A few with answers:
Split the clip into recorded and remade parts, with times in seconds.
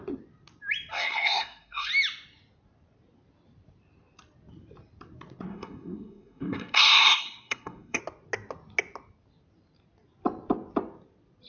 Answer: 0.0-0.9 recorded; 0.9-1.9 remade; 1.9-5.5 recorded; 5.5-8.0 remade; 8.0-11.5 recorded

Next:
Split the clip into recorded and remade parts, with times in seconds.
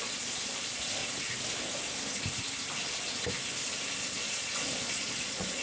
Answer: 0.0-1.0 remade; 1.0-4.0 recorded; 4.0-5.6 remade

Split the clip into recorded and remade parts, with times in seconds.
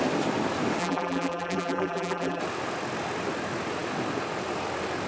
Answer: 0.0-0.8 recorded; 0.8-2.4 remade; 2.4-5.1 recorded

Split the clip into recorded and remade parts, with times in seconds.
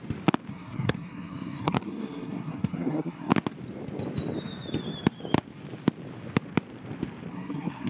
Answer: 0.0-0.5 recorded; 0.5-3.3 remade; 3.3-7.3 recorded; 7.3-7.9 remade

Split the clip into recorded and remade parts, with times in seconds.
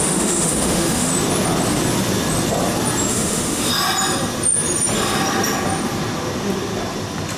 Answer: 0.0-1.1 remade; 1.1-3.1 recorded; 3.1-3.7 remade; 3.7-7.4 recorded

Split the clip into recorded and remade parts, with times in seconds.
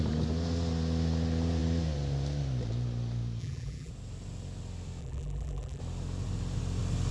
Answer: 0.0-3.4 recorded; 3.4-3.9 remade; 3.9-5.0 recorded; 5.0-5.8 remade; 5.8-7.1 recorded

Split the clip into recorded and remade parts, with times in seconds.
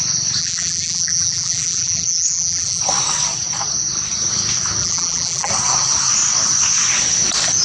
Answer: 0.0-0.4 recorded; 0.4-2.8 remade; 2.8-4.8 recorded; 4.8-5.5 remade; 5.5-7.6 recorded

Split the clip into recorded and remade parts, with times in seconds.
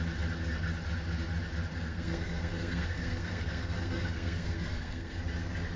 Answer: 0.0-1.7 recorded; 1.7-5.2 remade; 5.2-5.8 recorded